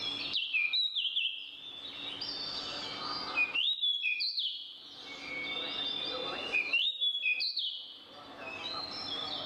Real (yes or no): yes